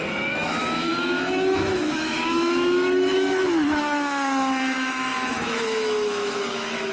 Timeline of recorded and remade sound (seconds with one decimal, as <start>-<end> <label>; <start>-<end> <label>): 0.0-6.9 remade